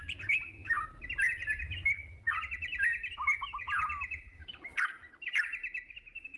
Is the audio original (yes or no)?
yes